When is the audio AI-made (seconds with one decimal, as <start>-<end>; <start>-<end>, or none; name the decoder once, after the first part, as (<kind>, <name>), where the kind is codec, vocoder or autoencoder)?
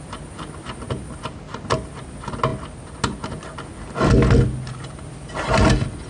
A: none